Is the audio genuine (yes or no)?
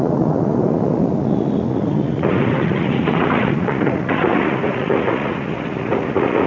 no